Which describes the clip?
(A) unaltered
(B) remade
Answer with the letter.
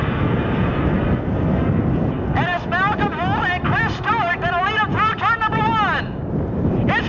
A